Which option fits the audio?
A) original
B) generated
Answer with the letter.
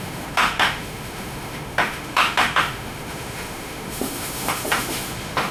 B